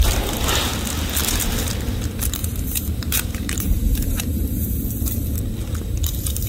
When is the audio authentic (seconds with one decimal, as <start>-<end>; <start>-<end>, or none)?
0.0-2.4; 4.7-6.5